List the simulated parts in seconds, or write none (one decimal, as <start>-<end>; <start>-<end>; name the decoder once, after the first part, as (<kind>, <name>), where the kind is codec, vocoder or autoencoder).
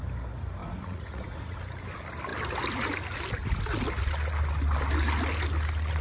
0.6-1.6 (vocoder, Vocos)